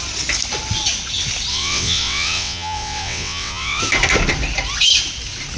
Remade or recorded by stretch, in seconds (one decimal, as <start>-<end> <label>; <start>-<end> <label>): 0.0-1.5 recorded; 1.5-3.8 remade; 3.8-5.6 recorded